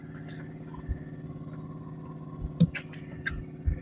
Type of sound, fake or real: real